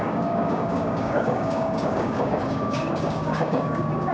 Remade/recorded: remade